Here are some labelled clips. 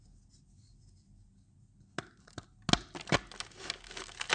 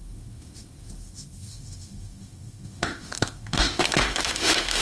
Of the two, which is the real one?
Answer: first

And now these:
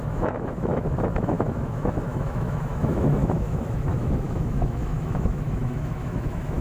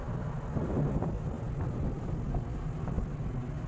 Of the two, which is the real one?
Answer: second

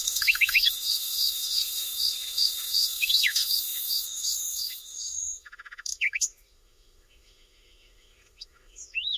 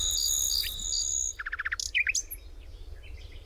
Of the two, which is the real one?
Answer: second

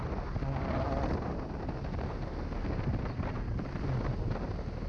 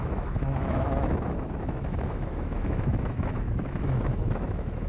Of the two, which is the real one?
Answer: first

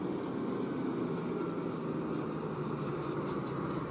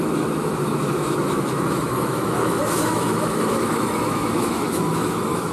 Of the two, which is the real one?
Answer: first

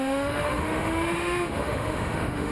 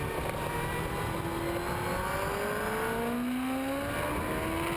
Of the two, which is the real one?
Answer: second